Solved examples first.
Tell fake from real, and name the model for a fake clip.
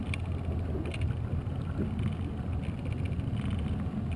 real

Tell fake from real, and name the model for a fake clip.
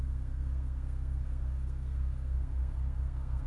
fake, codec, SNAC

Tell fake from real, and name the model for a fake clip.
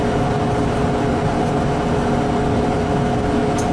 real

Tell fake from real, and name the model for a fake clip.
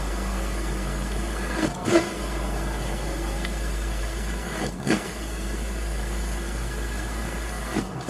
fake, codec, SNAC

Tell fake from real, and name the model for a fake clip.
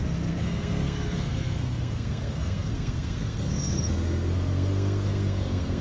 fake, codec, SNAC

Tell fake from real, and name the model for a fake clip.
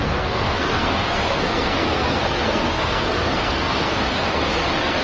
fake, codec, SNAC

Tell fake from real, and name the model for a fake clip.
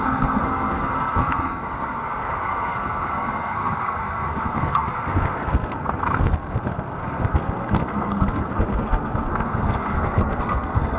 fake, codec, SNAC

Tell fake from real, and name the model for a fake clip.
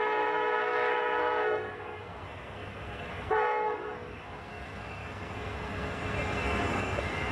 fake, codec, SNAC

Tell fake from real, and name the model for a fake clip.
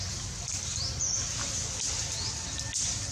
real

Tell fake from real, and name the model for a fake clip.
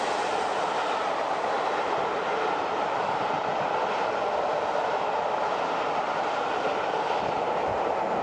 real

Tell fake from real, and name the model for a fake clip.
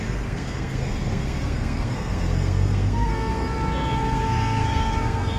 fake, codec, SNAC